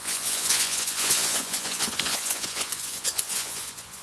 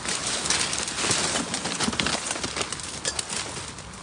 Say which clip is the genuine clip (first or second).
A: second